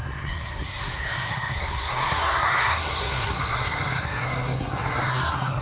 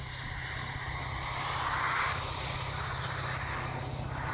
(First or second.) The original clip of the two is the second